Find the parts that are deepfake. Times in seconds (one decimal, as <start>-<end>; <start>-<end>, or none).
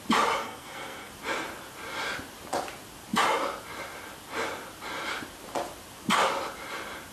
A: 0.4-1.1